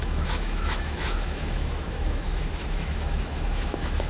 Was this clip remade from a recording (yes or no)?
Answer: yes